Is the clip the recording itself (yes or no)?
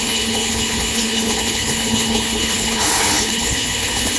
no